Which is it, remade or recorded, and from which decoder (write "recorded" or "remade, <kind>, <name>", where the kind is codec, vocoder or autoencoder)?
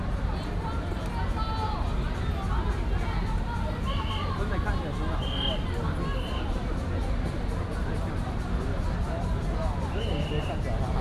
recorded